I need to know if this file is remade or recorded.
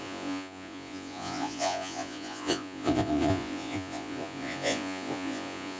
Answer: remade